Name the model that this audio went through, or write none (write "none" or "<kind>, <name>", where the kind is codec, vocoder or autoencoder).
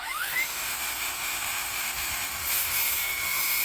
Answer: autoencoder, DAC-VAE